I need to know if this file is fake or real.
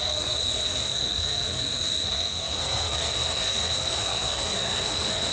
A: fake